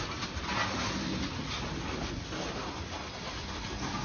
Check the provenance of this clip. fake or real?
real